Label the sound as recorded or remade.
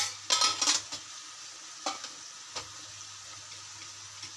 recorded